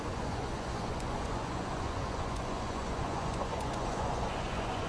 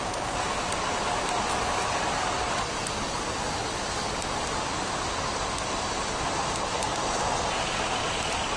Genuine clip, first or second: second